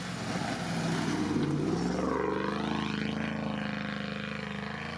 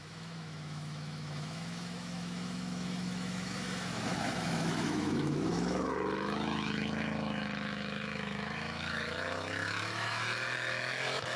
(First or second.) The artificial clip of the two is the second